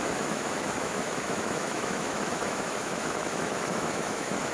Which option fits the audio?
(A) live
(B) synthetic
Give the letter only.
B